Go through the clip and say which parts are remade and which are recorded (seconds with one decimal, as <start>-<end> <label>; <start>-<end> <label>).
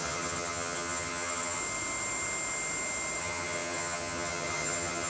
0.0-1.6 remade; 1.6-3.2 recorded; 3.2-5.1 remade